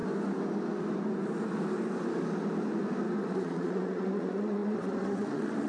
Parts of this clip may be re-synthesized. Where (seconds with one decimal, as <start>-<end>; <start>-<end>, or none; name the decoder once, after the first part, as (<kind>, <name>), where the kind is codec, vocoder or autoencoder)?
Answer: 3.2-5.7 (vocoder, Vocos)